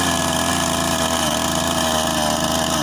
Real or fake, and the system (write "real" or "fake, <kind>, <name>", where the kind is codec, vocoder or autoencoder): real